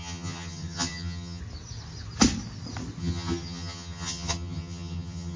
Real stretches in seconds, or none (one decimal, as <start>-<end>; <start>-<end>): 1.4-3.0